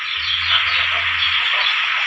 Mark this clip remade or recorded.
remade